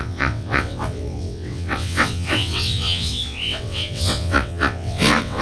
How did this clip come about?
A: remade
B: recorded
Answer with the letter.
A